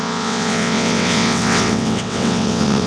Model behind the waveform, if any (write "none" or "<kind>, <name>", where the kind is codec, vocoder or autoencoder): vocoder, WaveNeXt